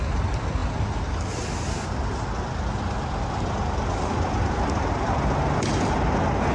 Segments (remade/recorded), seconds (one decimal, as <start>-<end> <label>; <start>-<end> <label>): 0.0-6.5 recorded